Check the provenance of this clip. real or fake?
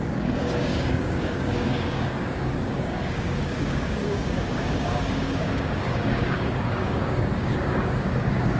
fake